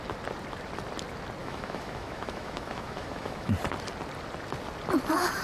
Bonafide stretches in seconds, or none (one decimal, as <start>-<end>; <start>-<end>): 0.0-1.4; 3.5-5.4